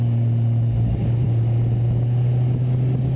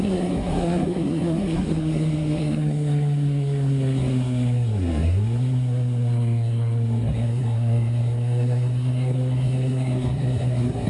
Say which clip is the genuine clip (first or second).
first